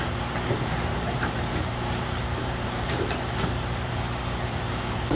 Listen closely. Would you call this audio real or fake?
fake